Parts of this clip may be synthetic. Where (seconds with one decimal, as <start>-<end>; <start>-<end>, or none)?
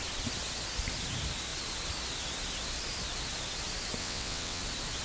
4.0-4.6